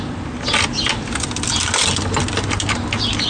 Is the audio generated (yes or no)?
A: no